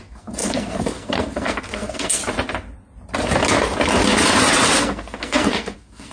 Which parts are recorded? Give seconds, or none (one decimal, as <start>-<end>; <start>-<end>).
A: 2.2-4.8